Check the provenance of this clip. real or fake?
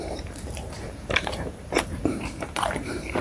fake